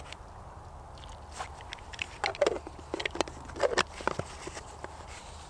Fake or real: real